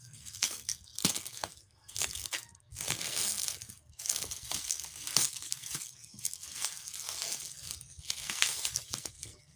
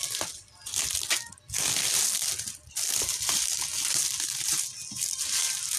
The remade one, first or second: first